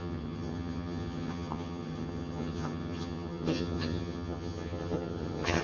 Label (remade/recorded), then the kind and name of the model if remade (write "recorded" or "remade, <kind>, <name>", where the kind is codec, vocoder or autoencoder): remade, vocoder, HiFi-GAN